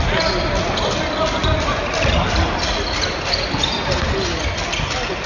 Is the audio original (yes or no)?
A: yes